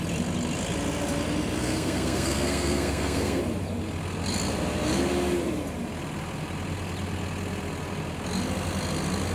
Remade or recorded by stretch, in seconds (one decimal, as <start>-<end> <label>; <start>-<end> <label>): 0.0-1.6 recorded; 1.6-3.4 remade; 3.4-9.3 recorded